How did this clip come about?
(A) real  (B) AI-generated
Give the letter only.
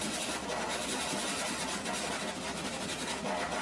A